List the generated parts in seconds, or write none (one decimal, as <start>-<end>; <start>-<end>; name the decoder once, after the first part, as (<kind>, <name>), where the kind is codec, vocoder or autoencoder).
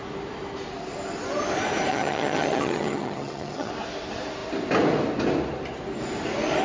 1.9-3.7 (vocoder, HiFi-GAN)